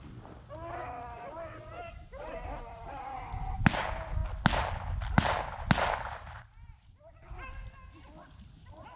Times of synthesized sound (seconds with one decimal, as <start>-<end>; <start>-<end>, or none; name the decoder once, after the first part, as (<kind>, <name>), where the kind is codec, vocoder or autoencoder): none